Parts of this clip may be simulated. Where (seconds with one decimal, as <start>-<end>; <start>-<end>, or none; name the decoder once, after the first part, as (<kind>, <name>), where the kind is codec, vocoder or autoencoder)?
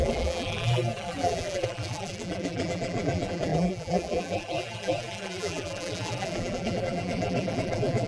0.0-8.1 (vocoder, BigVGAN v2)